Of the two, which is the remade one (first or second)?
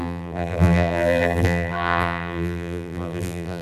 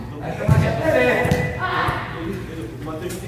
first